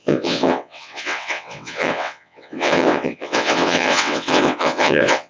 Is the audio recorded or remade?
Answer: remade